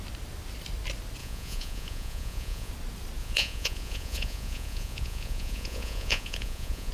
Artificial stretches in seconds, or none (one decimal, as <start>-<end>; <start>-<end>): 1.2-2.7; 3.2-6.9